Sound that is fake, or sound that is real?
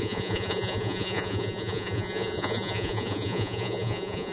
fake